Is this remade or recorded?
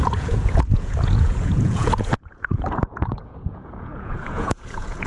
remade